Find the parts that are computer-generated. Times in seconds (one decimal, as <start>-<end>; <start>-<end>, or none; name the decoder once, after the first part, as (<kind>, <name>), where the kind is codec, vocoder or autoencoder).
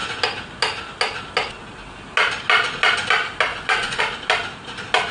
3.5-4.0 (vocoder, Vocos)